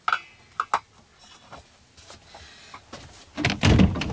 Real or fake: real